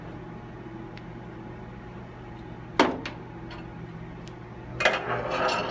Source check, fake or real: real